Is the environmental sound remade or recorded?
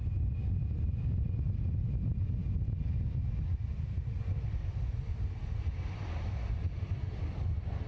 recorded